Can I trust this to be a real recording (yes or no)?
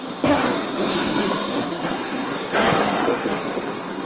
no